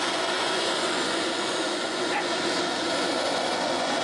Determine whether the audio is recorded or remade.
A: remade